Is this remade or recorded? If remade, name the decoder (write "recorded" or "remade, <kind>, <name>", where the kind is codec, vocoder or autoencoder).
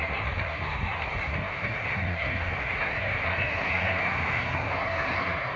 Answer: remade, codec, SNAC